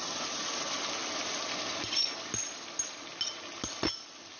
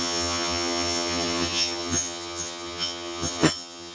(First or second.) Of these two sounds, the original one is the first